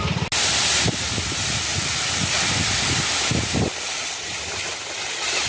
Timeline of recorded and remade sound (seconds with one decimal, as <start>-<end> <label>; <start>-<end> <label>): 0.0-5.5 recorded